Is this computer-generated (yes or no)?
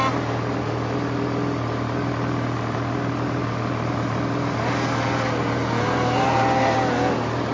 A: no